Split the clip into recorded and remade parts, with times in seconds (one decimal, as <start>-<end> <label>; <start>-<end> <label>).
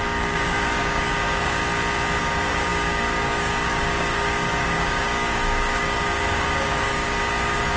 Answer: 0.0-1.6 remade; 1.6-2.2 recorded; 2.2-7.8 remade